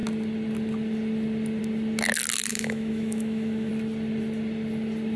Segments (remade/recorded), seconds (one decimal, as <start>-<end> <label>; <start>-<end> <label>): 0.0-2.5 recorded; 2.5-3.7 remade; 3.7-5.2 recorded